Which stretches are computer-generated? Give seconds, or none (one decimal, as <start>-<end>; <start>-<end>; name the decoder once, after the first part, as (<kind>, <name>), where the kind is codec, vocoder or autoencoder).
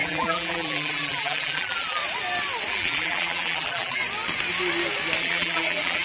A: 0.0-2.0 (vocoder, BigVGAN v2); 2.7-4.0; 5.2-6.0